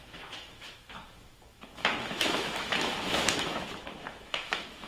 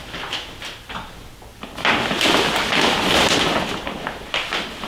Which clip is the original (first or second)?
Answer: second